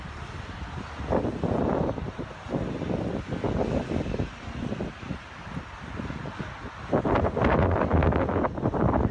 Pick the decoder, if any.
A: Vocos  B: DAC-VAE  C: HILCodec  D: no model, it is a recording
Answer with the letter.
D